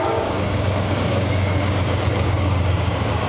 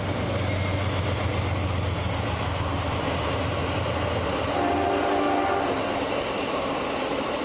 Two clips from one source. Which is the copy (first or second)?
first